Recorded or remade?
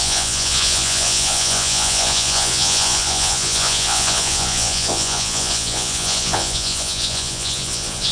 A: remade